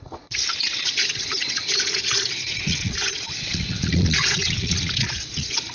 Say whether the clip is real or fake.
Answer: fake